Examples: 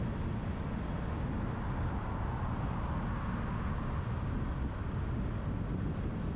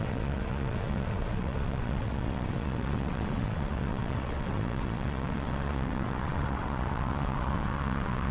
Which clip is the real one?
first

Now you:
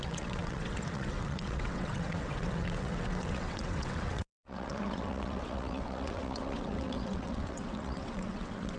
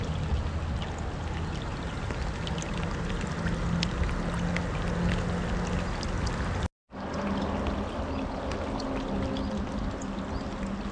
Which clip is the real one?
second